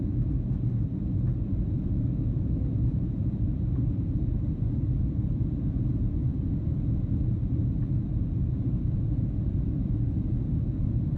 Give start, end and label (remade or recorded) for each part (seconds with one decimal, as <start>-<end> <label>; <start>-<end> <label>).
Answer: 0.0-11.2 remade